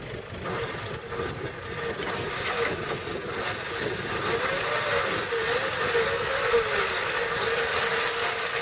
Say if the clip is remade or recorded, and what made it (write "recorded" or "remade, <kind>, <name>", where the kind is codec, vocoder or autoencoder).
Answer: recorded